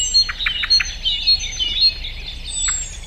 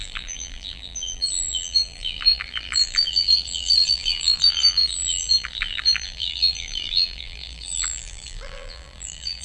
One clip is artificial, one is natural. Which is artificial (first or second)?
second